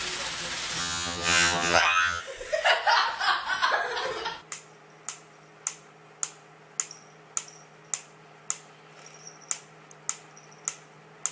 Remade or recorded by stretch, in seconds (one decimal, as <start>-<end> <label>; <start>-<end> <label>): 0.0-0.8 recorded; 0.8-2.2 remade; 2.2-11.3 recorded